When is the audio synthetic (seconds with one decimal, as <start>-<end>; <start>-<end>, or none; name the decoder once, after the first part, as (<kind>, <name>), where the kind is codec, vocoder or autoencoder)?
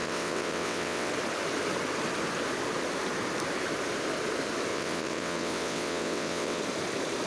0.0-1.1 (vocoder, WaveNeXt); 4.7-6.6